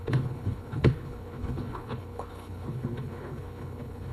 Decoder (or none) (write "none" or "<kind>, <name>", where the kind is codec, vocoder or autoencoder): codec, HILCodec